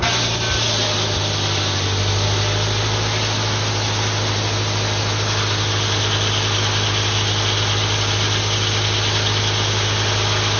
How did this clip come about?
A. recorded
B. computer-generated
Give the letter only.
A